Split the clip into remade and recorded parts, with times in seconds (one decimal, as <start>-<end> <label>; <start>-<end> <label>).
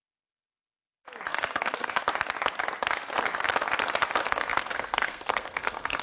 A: 0.0-1.3 recorded; 1.3-2.0 remade; 2.0-4.2 recorded; 4.2-6.0 remade